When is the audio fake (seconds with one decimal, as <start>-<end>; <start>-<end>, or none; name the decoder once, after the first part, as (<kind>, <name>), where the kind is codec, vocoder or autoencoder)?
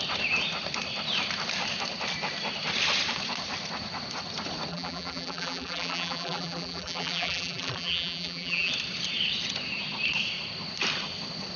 4.7-8.7 (vocoder, BigVGAN v2)